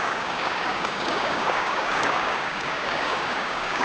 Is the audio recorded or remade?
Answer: remade